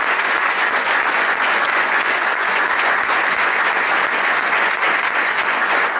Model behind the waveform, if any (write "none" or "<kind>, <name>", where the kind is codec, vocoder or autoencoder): vocoder, Vocos